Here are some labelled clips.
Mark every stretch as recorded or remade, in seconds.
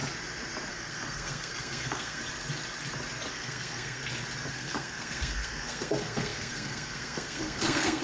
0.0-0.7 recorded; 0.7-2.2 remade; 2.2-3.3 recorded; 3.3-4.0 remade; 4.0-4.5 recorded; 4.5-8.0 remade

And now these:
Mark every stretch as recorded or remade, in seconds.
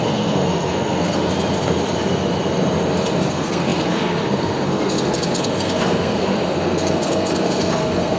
0.0-1.3 remade; 1.3-3.3 recorded; 3.3-8.2 remade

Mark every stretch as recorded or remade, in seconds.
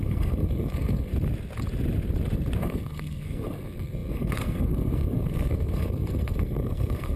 0.0-1.1 remade; 1.1-2.6 recorded; 2.6-7.2 remade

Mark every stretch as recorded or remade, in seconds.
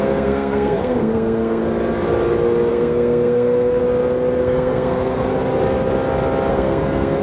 0.0-1.6 remade; 1.6-2.7 recorded; 2.7-3.8 remade; 3.8-4.4 recorded; 4.4-5.3 remade; 5.3-6.5 recorded; 6.5-7.2 remade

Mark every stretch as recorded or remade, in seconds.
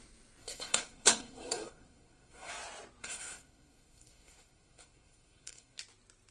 0.0-0.4 recorded; 0.4-2.5 remade; 2.5-3.0 recorded; 3.0-5.8 remade; 5.8-6.3 recorded